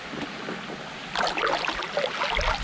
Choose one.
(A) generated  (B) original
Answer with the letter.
B